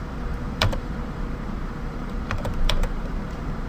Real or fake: fake